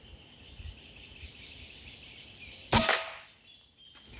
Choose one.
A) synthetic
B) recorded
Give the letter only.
B